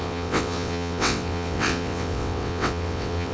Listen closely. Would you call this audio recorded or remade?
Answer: remade